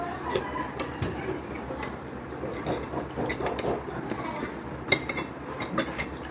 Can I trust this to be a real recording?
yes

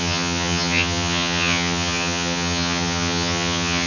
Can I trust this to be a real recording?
no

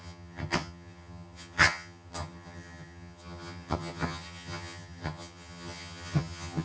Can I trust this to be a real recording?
no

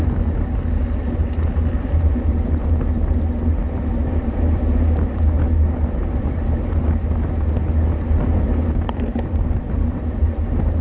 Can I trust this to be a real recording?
yes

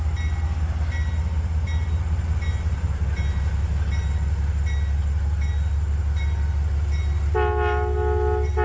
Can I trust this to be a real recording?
yes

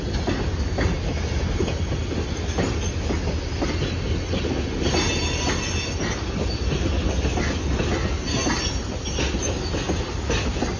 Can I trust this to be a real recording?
yes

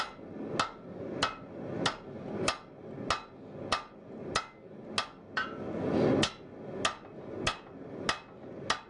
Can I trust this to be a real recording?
yes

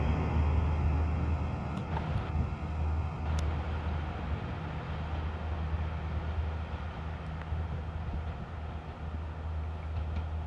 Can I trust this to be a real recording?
yes